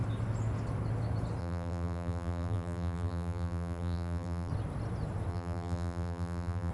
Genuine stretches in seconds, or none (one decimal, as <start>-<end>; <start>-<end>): 0.0-1.4; 4.5-5.3